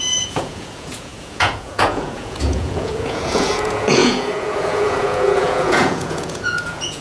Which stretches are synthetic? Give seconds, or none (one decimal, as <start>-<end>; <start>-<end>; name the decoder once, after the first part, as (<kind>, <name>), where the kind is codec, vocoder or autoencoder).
0.0-7.0 (vocoder, Vocos)